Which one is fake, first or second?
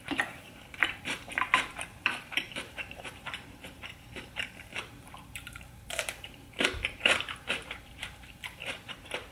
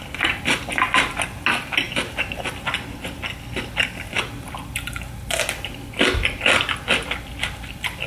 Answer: first